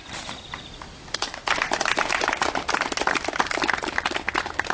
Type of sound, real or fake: real